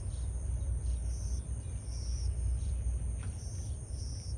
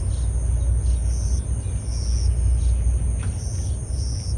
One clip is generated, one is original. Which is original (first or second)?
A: second